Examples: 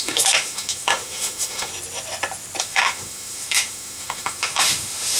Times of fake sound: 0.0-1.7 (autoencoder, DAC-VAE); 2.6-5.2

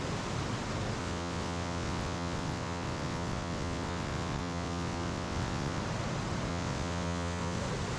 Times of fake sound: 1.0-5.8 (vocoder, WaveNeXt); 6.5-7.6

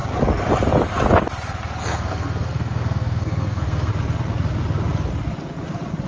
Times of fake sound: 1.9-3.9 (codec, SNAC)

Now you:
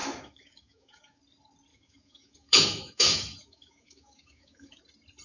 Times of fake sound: 0.0-1.2 (autoencoder, DAC-VAE); 1.7-4.8

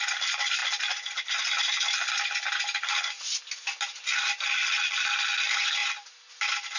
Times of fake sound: none

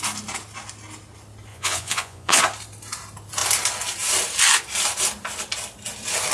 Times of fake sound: 1.5-2.4 (vocoder, Vocos)